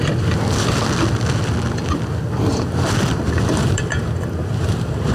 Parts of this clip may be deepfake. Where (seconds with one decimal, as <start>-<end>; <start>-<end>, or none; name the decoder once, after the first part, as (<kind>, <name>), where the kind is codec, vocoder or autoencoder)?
2.5-3.2 (vocoder, BigVGAN v2); 3.6-5.1